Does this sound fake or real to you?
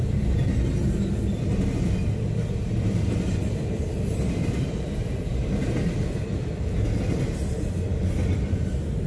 real